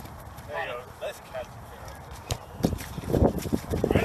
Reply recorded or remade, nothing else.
remade